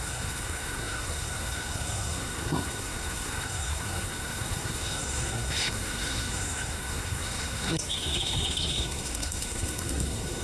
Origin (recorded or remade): remade